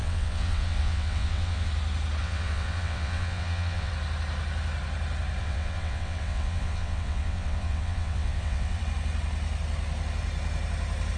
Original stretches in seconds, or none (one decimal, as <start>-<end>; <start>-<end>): 1.7-2.2; 3.9-5.4; 8.8-11.2